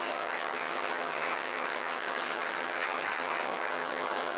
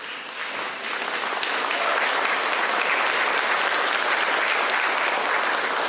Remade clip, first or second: first